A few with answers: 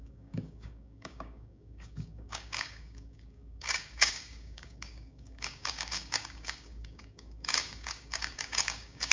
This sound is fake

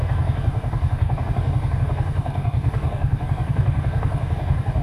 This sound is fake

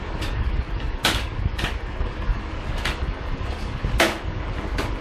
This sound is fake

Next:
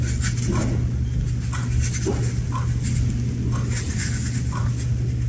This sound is real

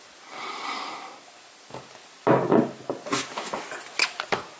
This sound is real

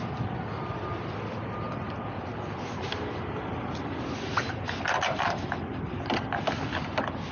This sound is real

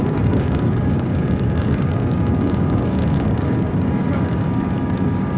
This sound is fake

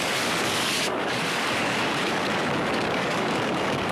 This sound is fake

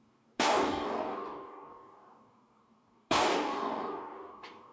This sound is fake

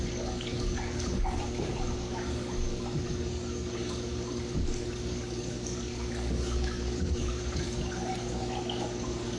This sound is fake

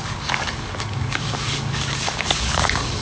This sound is fake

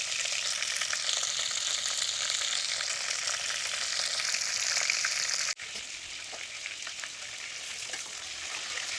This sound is real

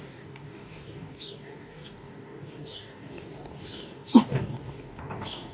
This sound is fake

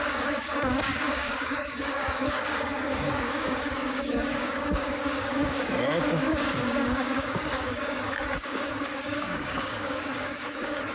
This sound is fake